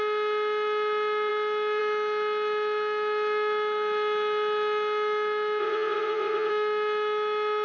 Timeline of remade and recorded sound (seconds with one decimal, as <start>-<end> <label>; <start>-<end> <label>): 0.0-5.6 recorded; 5.6-6.5 remade; 6.5-7.6 recorded